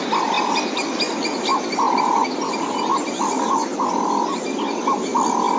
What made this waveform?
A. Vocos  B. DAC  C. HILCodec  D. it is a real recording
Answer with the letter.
D